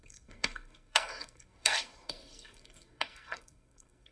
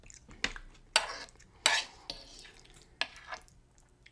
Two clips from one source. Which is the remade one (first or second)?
first